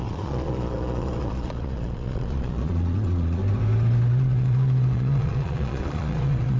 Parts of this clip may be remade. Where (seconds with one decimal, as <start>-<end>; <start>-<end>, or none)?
0.0-3.4; 4.1-6.6